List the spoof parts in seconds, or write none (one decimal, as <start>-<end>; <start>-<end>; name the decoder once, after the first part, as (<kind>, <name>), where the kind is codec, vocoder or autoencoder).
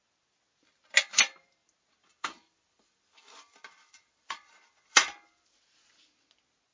2.1-5.9 (vocoder, BigVGAN v2)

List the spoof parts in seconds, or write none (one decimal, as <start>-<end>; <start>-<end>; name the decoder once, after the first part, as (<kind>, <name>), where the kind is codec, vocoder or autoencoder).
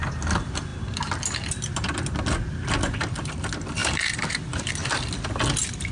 3.8-4.7 (vocoder, BigVGAN v2)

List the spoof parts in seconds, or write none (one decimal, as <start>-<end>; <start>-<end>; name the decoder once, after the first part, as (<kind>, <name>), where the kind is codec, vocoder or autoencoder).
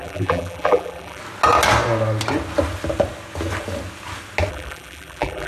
0.0-1.2 (vocoder, BigVGAN v2); 4.5-5.5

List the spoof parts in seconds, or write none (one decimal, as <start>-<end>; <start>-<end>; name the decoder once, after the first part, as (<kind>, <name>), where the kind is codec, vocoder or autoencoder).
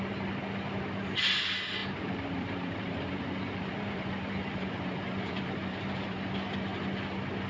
1.8-6.3 (vocoder, BigVGAN v2)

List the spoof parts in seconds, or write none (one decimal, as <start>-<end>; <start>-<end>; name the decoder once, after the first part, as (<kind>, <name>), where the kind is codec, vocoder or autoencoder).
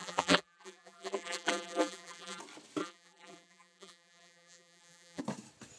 0.0-2.4 (vocoder, BigVGAN v2); 2.8-5.2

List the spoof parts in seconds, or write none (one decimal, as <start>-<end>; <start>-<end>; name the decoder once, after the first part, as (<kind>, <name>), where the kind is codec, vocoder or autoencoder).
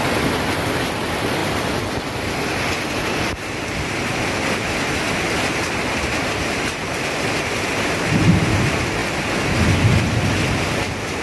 1.4-5.1 (vocoder, BigVGAN v2); 5.5-8.2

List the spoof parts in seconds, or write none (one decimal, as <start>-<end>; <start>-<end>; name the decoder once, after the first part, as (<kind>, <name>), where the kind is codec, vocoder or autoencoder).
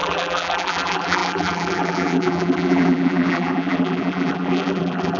0.0-5.2 (vocoder, BigVGAN v2)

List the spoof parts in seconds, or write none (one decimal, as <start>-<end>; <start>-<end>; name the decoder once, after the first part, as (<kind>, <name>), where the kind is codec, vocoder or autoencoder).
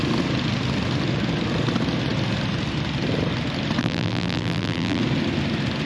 3.8-5.0 (vocoder, BigVGAN v2)